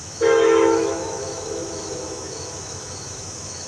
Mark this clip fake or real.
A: fake